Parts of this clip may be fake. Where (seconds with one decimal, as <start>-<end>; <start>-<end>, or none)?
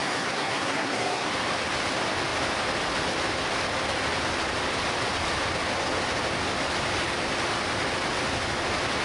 0.0-1.3